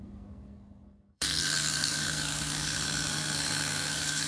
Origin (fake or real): fake